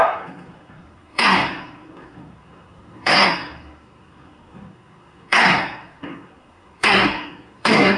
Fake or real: fake